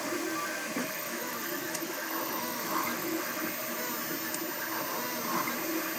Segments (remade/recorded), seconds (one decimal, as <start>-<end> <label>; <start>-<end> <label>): 0.0-0.8 recorded; 0.8-3.4 remade; 3.4-6.0 recorded